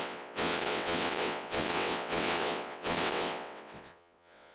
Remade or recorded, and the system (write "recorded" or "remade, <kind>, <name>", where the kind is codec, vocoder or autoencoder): remade, vocoder, WaveNeXt